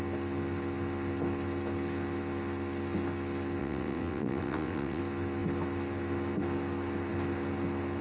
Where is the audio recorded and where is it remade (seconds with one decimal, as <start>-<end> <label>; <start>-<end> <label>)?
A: 0.0-3.6 recorded; 3.6-5.0 remade; 5.0-8.0 recorded